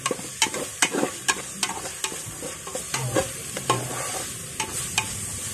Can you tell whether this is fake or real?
real